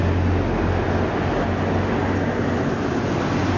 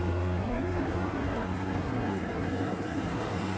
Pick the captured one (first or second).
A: first